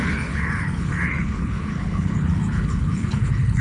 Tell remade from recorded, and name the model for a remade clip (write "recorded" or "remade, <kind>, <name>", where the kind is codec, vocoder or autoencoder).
remade, codec, HILCodec